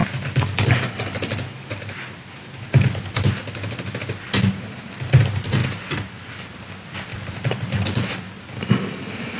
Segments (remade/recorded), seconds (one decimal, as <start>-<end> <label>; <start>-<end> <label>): 0.0-5.6 recorded; 5.6-6.6 remade; 6.6-7.1 recorded; 7.1-8.1 remade; 8.1-9.4 recorded